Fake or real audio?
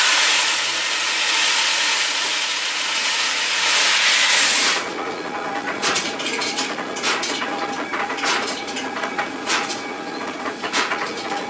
fake